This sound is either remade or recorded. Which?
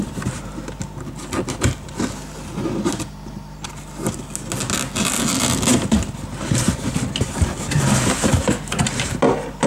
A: recorded